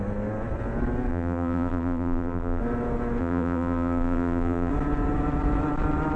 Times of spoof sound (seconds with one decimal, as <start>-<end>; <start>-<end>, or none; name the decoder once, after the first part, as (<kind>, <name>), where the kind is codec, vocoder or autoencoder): 1.1-2.6 (vocoder, BigVGAN v2); 3.2-4.7